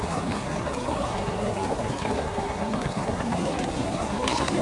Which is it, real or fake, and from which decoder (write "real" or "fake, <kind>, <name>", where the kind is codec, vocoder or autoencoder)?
fake, codec, SNAC